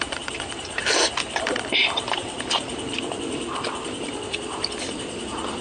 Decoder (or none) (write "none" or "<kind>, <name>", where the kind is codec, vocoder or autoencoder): vocoder, BigVGAN v2